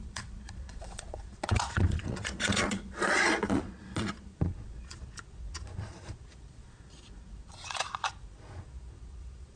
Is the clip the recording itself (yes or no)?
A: no